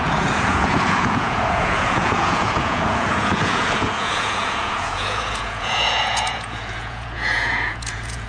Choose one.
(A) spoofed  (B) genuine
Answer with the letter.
A